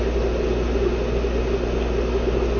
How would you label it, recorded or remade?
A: recorded